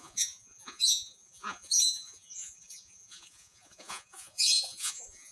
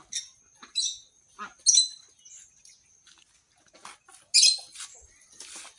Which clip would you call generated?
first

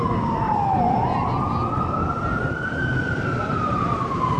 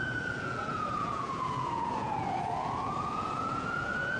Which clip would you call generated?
second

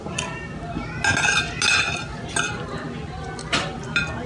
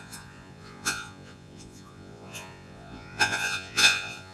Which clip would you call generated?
second